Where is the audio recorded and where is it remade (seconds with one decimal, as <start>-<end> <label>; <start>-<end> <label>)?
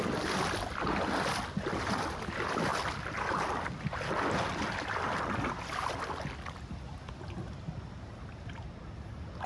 0.0-9.5 recorded